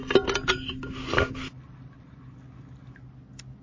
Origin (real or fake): real